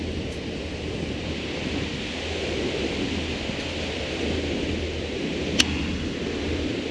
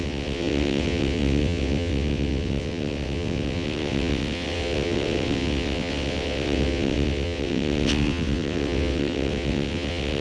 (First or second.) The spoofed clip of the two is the second